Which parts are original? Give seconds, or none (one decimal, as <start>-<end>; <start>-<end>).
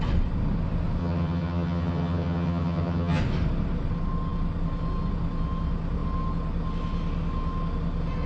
0.0-1.0; 3.2-8.3